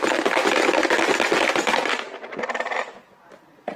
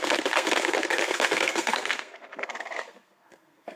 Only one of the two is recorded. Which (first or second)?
first